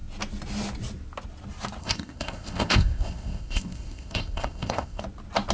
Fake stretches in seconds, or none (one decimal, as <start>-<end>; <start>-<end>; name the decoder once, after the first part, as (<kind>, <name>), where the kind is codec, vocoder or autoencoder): 1.8-5.0 (codec, ZipCodec)